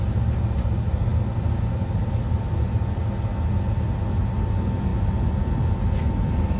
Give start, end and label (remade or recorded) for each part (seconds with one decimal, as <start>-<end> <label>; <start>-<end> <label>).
0.0-6.6 recorded